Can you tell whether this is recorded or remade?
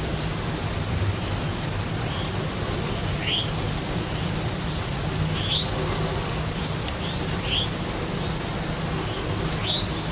recorded